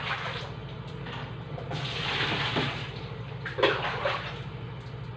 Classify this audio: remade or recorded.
recorded